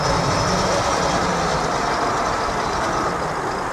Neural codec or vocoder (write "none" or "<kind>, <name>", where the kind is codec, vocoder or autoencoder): none